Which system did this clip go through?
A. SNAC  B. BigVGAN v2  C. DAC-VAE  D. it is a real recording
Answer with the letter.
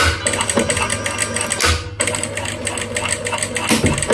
D